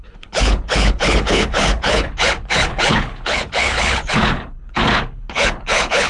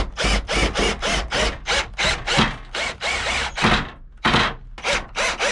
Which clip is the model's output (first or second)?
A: first